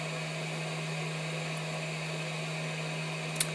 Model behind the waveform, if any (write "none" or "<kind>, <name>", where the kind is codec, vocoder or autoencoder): none